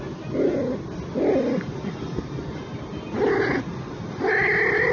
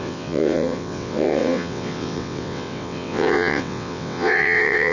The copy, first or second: second